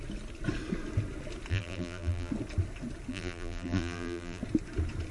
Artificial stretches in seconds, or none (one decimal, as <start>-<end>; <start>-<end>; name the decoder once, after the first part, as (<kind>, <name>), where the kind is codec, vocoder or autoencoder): 1.5-2.3 (vocoder, BigVGAN v2); 3.1-4.4